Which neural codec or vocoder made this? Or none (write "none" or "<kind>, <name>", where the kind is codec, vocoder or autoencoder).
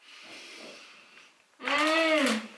none